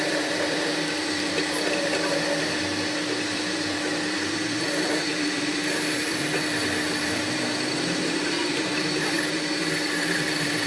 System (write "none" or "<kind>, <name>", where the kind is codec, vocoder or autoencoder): vocoder, BigVGAN v2